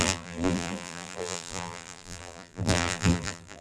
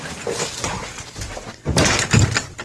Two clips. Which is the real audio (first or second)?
second